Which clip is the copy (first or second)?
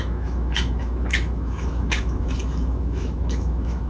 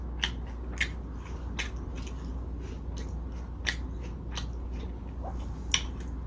first